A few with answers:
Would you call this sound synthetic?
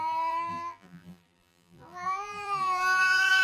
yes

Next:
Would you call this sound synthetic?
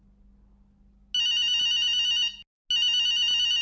no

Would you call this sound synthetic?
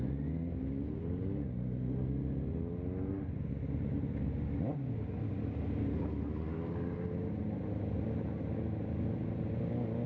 no